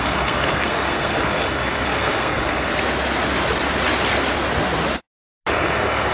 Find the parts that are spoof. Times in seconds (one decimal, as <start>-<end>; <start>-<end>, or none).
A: 0.0-2.7; 5.5-6.1